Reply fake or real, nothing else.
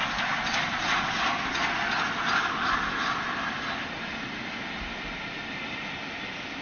real